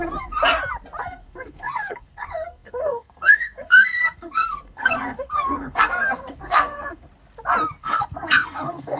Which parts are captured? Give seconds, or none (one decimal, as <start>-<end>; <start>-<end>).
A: 0.4-1.0; 7.1-7.8